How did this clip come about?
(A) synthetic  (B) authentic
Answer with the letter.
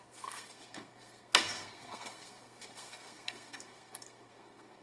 A